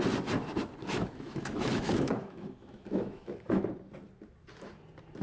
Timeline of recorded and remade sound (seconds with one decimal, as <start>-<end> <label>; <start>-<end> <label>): 0.0-0.8 recorded; 0.8-3.6 remade; 3.6-5.2 recorded